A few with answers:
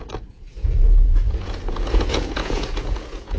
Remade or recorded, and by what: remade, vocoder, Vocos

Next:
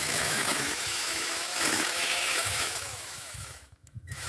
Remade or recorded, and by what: remade, autoencoder, DAC-VAE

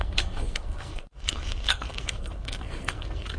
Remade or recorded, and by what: remade, codec, SNAC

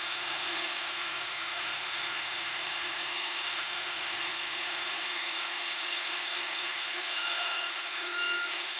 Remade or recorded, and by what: remade, autoencoder, DAC-VAE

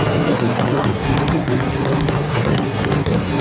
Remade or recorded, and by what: remade, codec, SNAC